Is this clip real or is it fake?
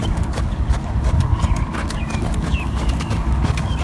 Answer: fake